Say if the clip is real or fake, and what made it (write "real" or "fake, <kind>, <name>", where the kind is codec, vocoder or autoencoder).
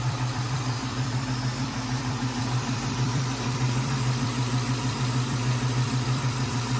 fake, vocoder, BigVGAN v2